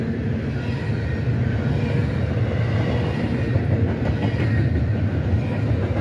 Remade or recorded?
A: recorded